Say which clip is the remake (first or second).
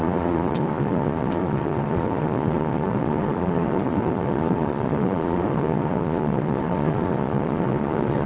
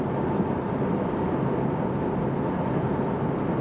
first